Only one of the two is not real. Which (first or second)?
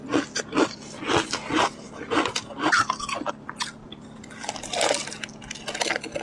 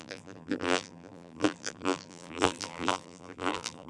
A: second